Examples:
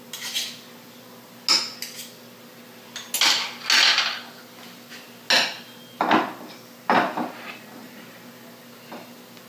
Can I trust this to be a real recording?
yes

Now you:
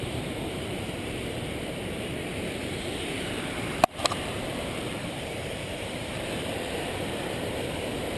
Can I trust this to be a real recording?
no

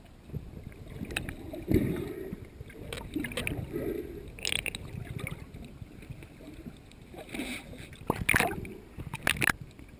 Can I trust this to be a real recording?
yes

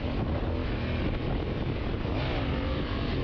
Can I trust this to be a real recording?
yes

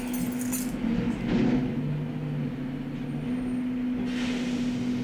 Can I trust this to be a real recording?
yes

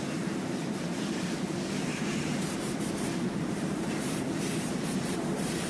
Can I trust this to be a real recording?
no